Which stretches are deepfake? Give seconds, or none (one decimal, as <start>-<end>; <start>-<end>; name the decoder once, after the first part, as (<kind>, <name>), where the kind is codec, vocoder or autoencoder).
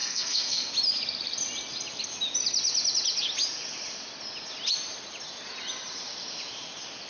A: 0.0-0.7 (codec, SNAC)